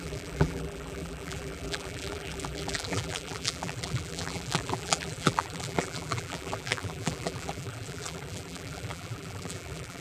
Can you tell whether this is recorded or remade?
remade